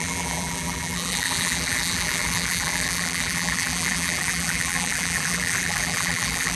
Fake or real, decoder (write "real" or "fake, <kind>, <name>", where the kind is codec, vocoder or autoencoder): fake, vocoder, BigVGAN v2